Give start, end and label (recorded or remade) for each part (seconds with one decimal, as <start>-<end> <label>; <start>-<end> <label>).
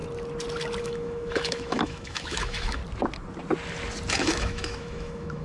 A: 0.0-0.8 recorded; 0.8-2.8 remade; 2.8-4.1 recorded; 4.1-5.4 remade